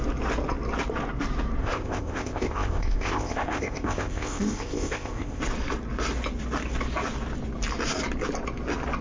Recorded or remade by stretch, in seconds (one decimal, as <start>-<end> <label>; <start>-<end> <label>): 0.0-1.6 recorded; 1.6-5.4 remade; 5.4-9.0 recorded